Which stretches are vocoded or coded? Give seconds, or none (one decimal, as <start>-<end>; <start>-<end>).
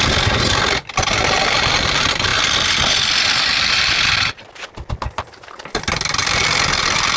none